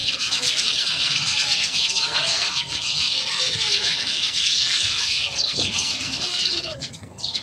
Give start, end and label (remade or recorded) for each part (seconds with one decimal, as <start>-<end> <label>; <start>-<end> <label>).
0.0-7.4 remade

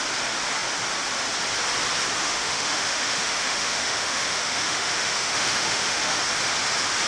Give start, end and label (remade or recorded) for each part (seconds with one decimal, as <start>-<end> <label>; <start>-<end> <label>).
0.0-2.2 recorded; 2.2-6.2 remade; 6.2-7.1 recorded

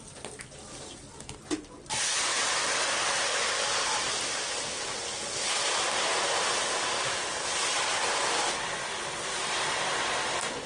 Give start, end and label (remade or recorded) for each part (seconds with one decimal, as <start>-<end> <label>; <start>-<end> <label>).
0.0-10.7 recorded

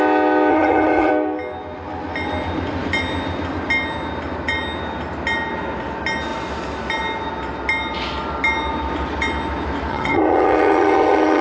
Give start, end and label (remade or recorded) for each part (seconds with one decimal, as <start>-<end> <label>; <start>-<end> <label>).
0.0-0.5 recorded; 0.5-1.1 remade; 1.1-9.9 recorded; 9.9-11.4 remade